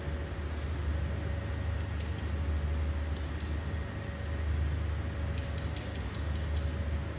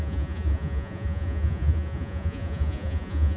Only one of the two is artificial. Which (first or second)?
second